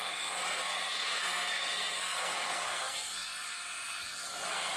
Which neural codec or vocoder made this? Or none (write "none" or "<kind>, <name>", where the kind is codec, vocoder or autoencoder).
codec, SNAC